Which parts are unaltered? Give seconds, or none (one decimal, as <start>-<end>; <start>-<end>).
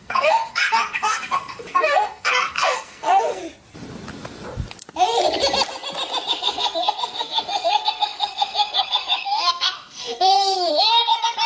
3.4-6.3